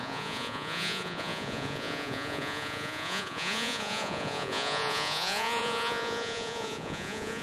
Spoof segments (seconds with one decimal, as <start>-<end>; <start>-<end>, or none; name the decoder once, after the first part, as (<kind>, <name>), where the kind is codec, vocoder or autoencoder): 0.0-7.4 (vocoder, Vocos)